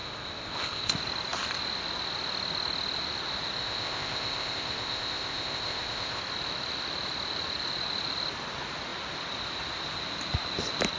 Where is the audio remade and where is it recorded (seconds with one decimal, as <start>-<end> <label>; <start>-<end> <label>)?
0.0-0.9 remade; 0.9-3.6 recorded; 3.6-6.2 remade; 6.2-11.0 recorded